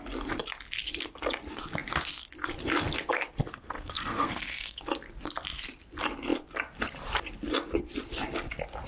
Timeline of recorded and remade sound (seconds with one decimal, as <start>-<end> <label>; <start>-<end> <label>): 0.0-3.4 recorded; 3.4-4.8 remade; 4.8-8.9 recorded